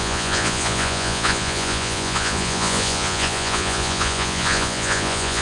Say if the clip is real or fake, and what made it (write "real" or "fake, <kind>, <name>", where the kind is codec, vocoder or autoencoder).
fake, vocoder, Vocos